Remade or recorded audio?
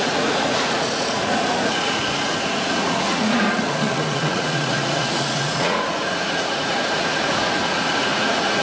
remade